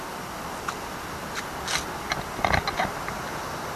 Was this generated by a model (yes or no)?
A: no